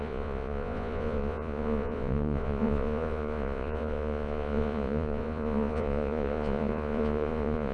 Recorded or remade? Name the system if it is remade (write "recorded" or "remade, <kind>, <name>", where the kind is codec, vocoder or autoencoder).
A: remade, vocoder, Vocos